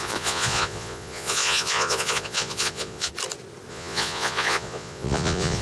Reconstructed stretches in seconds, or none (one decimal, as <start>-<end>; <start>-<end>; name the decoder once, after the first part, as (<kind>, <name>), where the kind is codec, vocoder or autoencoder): 0.0-3.1 (vocoder, Vocos); 3.7-5.6